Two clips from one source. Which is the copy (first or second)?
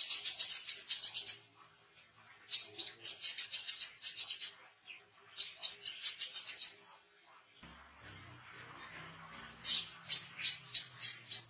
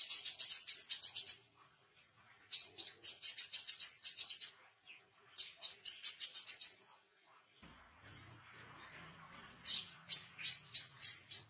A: second